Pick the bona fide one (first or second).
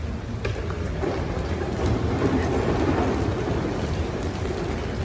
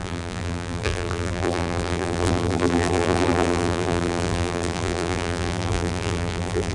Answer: first